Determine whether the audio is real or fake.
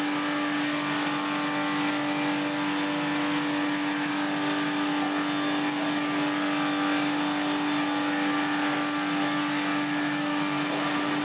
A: real